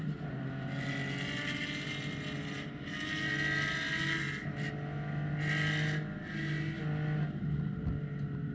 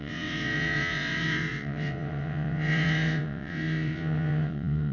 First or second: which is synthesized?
second